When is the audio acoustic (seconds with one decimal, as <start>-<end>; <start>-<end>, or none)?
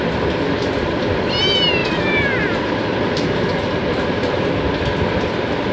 0.0-1.8; 4.4-5.7